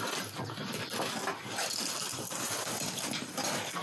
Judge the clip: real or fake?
real